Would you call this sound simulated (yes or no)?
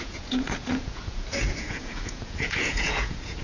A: yes